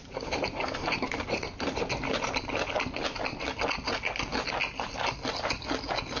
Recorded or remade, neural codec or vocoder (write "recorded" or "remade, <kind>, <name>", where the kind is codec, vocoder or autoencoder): recorded